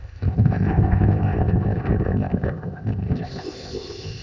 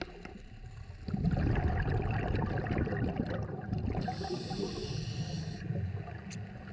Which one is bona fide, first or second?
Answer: second